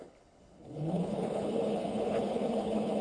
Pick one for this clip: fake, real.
fake